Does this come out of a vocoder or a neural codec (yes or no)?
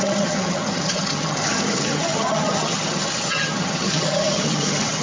yes